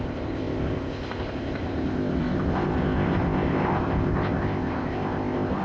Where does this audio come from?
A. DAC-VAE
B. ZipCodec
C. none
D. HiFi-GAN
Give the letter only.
B